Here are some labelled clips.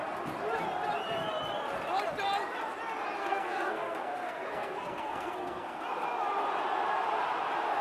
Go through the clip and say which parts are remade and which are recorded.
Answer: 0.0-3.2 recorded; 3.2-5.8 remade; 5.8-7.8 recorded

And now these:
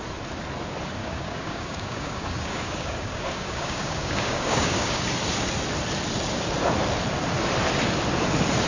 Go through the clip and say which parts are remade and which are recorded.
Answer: 0.0-1.0 recorded; 1.0-5.0 remade; 5.0-8.7 recorded